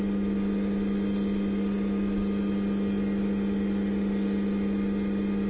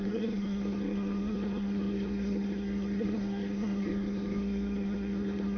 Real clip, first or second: first